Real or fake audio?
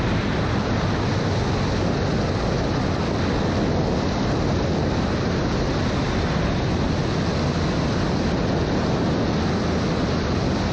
real